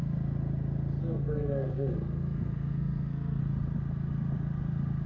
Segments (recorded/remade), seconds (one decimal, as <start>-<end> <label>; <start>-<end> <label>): 0.0-1.0 recorded; 1.0-3.4 remade; 3.4-5.1 recorded